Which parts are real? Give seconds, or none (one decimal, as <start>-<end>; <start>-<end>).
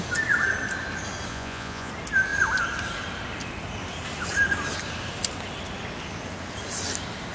0.0-1.3; 1.9-7.3